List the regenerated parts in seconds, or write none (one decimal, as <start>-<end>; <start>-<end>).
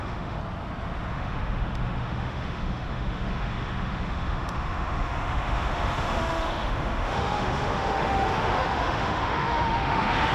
0.0-0.4; 1.1-10.3